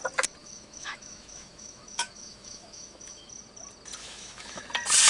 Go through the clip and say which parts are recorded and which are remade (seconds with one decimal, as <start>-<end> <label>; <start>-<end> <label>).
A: 0.0-0.4 recorded; 0.4-3.3 remade; 3.3-4.0 recorded; 4.0-4.6 remade; 4.6-5.1 recorded